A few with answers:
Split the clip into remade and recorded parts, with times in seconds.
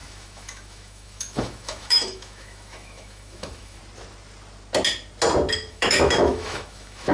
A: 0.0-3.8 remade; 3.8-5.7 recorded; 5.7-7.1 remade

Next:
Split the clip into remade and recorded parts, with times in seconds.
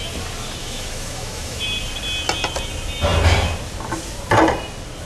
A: 0.0-0.6 recorded; 0.6-1.6 remade; 1.6-5.1 recorded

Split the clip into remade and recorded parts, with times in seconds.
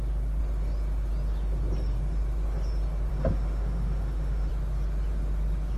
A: 0.0-3.1 recorded; 3.1-4.5 remade; 4.5-5.8 recorded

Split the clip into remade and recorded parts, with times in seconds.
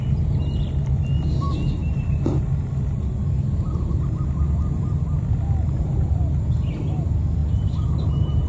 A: 0.0-8.5 recorded